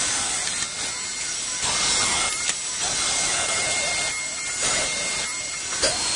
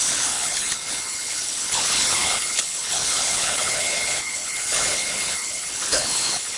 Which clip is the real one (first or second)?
first